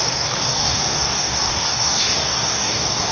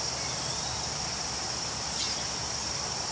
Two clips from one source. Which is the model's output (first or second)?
first